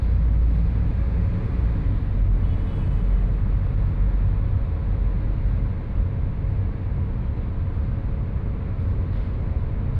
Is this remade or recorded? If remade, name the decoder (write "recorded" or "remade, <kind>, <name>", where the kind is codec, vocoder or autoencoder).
recorded